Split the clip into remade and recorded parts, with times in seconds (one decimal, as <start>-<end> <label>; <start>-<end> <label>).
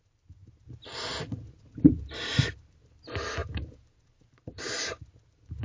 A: 0.0-0.4 remade; 0.4-1.5 recorded; 1.5-5.6 remade